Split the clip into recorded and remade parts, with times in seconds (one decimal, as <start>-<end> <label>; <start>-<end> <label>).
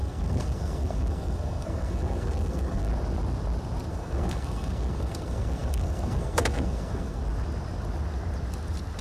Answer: 0.0-2.9 remade; 2.9-3.9 recorded; 3.9-7.2 remade; 7.2-9.0 recorded